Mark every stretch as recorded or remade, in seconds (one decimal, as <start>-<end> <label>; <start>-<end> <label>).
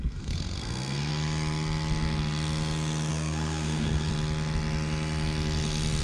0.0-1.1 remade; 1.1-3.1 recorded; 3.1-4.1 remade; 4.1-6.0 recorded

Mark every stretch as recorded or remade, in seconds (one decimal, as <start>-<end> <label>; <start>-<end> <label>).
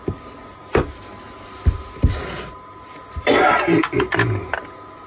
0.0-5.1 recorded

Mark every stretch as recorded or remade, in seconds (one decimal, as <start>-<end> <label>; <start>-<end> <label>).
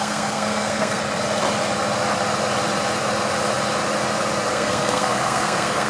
0.0-1.0 remade; 1.0-4.5 recorded; 4.5-5.9 remade